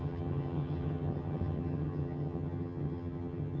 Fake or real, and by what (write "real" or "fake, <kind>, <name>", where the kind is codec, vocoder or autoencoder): fake, vocoder, HiFi-GAN